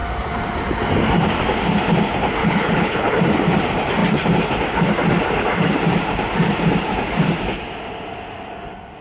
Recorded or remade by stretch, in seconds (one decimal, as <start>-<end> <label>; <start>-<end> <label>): 0.0-2.4 recorded; 2.4-3.1 remade; 3.1-9.0 recorded

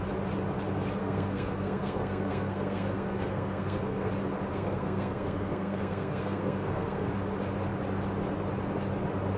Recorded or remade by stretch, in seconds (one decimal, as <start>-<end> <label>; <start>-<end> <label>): 0.0-1.0 recorded; 1.0-4.1 remade; 4.1-4.5 recorded; 4.5-7.1 remade; 7.1-9.4 recorded